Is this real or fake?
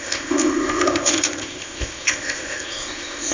fake